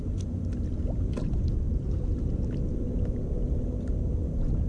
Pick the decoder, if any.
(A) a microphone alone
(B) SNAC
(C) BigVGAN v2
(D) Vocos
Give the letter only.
A